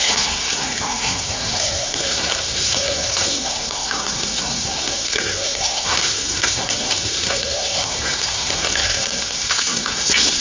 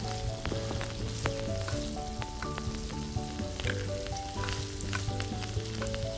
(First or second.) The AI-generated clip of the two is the first